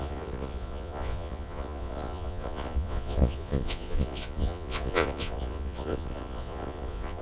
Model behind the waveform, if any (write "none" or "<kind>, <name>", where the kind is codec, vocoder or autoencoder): vocoder, Vocos